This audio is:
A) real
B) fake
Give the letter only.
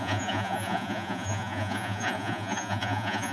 B